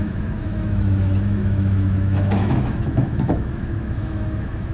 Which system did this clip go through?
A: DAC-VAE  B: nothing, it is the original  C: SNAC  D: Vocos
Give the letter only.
A